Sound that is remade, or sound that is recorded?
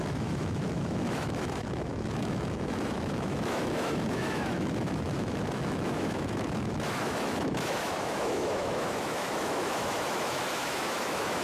remade